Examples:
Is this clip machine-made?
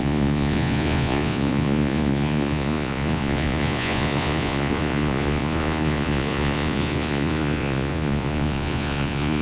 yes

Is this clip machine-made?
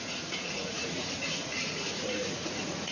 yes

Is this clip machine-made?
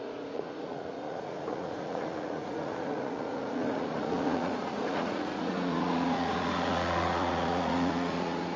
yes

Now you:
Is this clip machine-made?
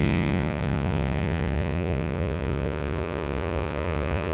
yes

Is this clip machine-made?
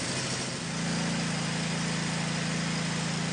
no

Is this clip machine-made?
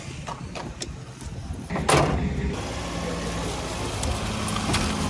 no